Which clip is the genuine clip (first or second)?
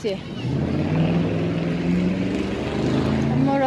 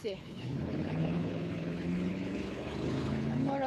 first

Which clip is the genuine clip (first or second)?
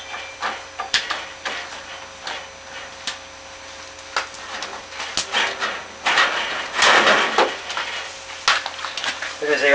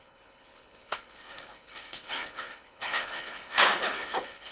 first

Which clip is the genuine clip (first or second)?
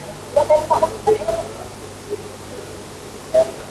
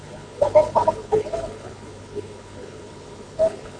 first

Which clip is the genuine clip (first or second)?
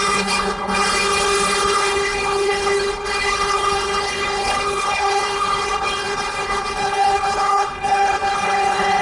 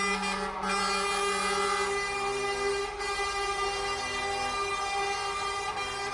second